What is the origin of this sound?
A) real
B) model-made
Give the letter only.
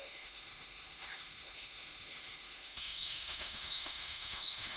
B